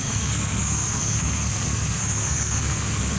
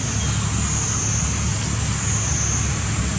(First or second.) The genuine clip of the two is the second